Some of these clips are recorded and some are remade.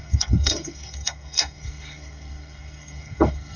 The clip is remade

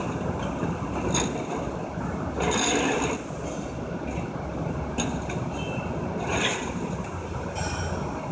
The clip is recorded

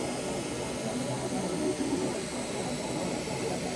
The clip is recorded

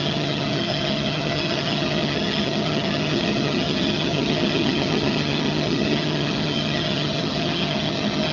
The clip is remade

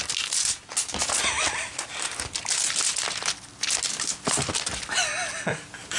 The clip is recorded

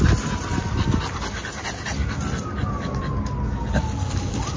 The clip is recorded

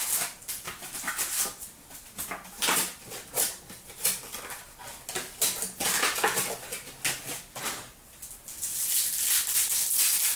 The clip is recorded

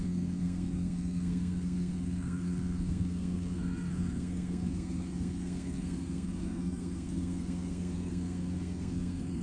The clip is remade